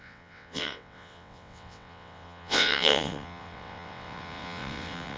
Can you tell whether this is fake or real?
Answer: fake